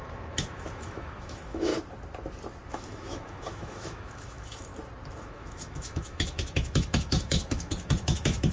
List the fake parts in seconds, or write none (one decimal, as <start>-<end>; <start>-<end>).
0.0-1.7; 2.7-4.7; 5.2-8.5